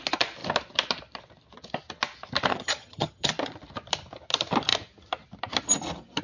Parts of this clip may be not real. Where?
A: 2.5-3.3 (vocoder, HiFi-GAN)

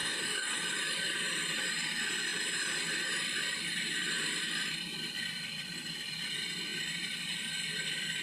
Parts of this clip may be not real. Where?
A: 0.0-0.6 (codec, DAC)

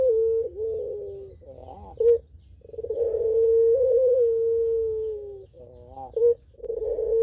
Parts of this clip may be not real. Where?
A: 3.3-5.6 (codec, DAC)

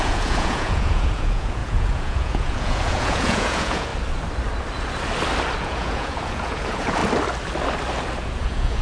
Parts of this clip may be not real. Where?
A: 0.0-3.9 (vocoder, Vocos); 5.6-7.0; 8.2-8.8

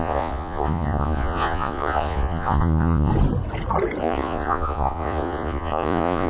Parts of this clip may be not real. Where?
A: 0.0-3.1 (vocoder, Vocos); 4.0-6.3

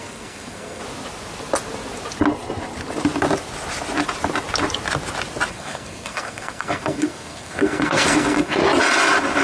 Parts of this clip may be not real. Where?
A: 0.0-0.8 (codec, SNAC); 5.5-8.6

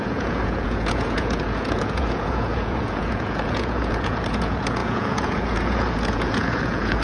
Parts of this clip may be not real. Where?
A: 0.0-7.0 (vocoder, Vocos)

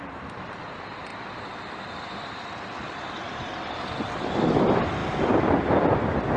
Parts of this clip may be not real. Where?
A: 1.1-4.2 (vocoder, BigVGAN v2); 5.0-5.8